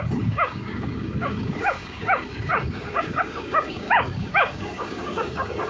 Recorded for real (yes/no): no